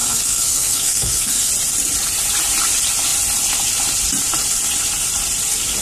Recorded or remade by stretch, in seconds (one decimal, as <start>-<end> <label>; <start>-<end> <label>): 0.0-1.5 remade; 1.5-5.8 recorded